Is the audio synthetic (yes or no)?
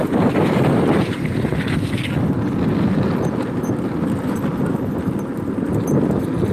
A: no